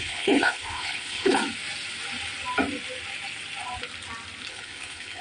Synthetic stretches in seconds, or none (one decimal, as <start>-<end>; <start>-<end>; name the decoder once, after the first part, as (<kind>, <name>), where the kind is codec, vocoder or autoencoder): 0.0-1.4 (codec, HILCodec); 4.5-5.2